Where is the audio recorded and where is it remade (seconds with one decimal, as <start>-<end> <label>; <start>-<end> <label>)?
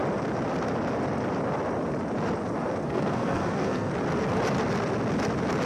0.0-2.8 recorded; 2.8-3.9 remade; 3.9-5.7 recorded